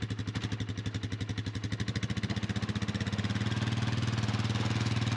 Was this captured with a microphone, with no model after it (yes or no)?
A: yes